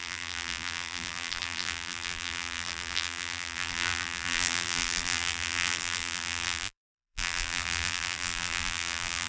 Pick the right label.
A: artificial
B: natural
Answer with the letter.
A